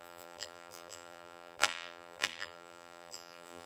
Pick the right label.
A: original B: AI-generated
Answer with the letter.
B